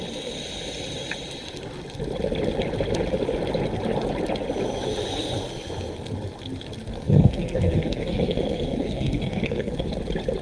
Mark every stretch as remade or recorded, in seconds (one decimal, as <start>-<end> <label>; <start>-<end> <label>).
0.0-6.9 recorded; 6.9-9.9 remade; 9.9-10.4 recorded